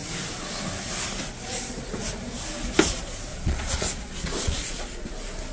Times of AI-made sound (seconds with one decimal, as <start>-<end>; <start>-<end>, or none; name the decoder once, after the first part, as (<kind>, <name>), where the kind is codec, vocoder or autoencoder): 3.3-5.1 (vocoder, Vocos)